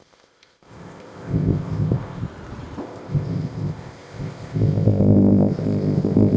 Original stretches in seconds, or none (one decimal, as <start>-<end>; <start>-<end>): 2.2-2.8